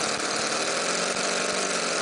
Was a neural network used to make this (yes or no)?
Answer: no